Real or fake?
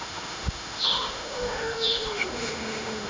fake